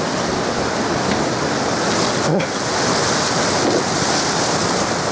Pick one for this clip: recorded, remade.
recorded